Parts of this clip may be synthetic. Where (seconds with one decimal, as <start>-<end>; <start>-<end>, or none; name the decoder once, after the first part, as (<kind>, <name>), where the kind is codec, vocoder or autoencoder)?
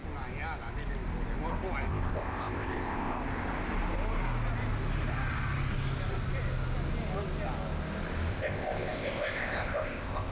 1.9-3.2 (codec, ZipCodec); 8.3-10.3